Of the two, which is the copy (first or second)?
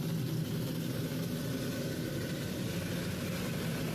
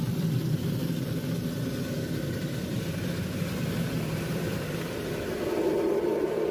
second